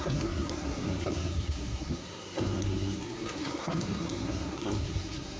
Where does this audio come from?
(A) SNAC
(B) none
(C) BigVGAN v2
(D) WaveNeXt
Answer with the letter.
A